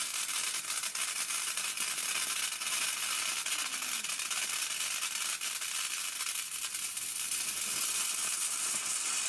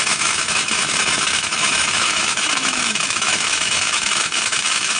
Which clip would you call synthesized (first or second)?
second